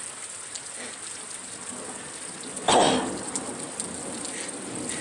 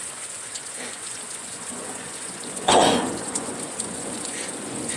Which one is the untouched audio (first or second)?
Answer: first